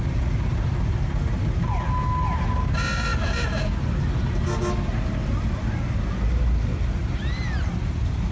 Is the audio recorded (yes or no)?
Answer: yes